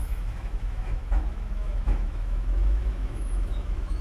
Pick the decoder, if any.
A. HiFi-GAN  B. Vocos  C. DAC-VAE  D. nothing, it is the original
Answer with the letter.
C